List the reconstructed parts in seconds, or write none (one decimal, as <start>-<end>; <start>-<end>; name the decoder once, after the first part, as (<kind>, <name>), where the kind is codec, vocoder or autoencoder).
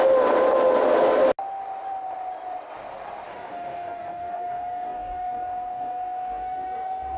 3.3-7.2 (codec, DAC)